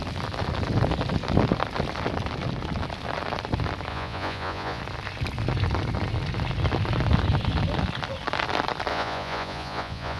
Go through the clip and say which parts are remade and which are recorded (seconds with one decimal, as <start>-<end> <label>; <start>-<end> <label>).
0.0-3.9 recorded; 3.9-4.8 remade; 4.8-8.9 recorded; 8.9-10.2 remade